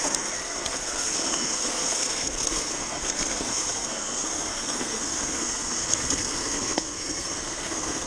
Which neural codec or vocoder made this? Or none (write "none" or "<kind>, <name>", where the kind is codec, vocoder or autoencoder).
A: codec, SNAC